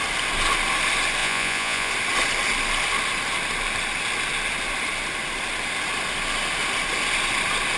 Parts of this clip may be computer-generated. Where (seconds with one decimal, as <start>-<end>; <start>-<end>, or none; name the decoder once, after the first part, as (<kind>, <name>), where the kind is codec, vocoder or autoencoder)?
1.2-1.9 (vocoder, Vocos)